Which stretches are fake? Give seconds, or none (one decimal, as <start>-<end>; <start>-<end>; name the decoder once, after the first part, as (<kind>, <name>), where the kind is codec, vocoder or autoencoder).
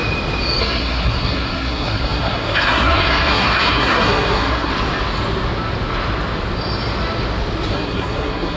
0.6-4.7 (codec, SNAC); 7.7-8.6